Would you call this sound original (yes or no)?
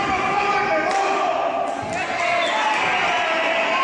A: yes